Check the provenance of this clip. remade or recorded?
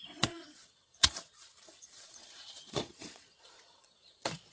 remade